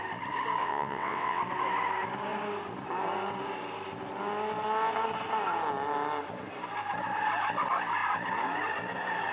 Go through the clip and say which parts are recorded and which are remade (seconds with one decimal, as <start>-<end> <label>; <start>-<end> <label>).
0.0-0.6 recorded; 0.6-1.4 remade; 1.4-9.3 recorded

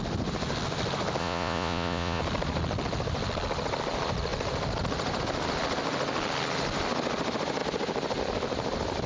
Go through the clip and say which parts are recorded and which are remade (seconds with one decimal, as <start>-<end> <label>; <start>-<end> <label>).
0.0-1.2 recorded; 1.2-2.2 remade; 2.2-9.1 recorded

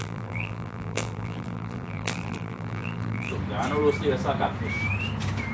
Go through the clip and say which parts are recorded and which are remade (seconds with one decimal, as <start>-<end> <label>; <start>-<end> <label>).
0.0-3.3 remade; 3.3-5.5 recorded